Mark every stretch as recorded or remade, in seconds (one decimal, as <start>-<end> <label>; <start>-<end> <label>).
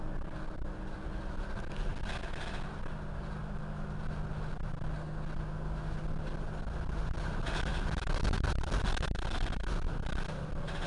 0.0-10.9 recorded